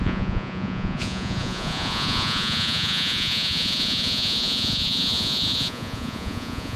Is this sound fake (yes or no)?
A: yes